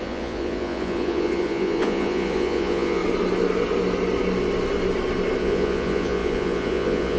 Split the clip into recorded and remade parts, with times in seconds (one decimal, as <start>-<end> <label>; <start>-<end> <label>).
0.0-3.0 remade; 3.0-5.4 recorded; 5.4-7.2 remade